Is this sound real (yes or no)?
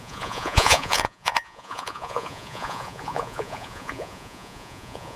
no